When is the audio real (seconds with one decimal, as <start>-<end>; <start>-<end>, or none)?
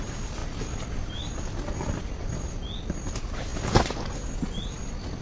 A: 0.0-5.2